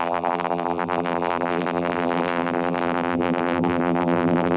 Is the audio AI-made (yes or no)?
yes